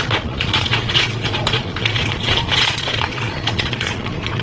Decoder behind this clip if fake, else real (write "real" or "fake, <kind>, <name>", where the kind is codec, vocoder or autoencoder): fake, vocoder, Vocos